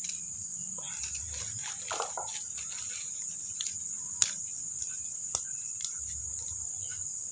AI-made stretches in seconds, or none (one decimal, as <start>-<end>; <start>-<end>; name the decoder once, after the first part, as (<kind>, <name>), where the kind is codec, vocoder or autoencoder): 0.0-2.3 (vocoder, BigVGAN v2); 4.6-7.3